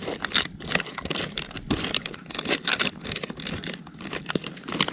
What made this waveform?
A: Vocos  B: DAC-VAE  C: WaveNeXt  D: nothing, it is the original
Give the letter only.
D